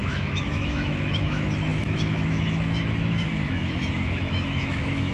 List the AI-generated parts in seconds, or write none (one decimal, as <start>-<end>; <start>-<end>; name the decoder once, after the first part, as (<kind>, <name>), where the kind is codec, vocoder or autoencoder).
0.0-5.1 (autoencoder, DAC-VAE)

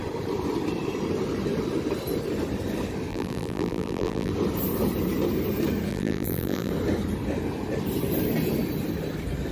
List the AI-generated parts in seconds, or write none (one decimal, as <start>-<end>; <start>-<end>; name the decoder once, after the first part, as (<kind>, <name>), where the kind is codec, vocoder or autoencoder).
3.1-4.3 (vocoder, BigVGAN v2); 5.9-6.7

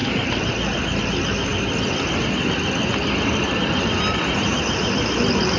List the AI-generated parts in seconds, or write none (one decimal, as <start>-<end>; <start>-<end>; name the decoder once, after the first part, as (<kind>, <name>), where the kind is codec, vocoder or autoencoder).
none